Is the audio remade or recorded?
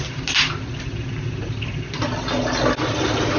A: recorded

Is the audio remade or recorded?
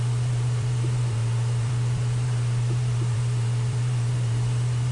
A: remade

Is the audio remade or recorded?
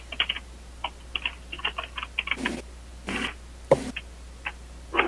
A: recorded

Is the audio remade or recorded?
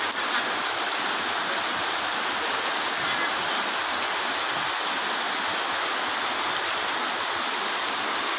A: recorded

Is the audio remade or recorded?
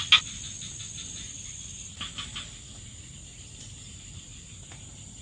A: recorded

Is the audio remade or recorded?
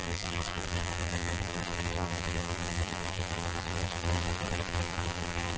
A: remade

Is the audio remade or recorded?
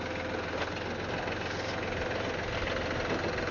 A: recorded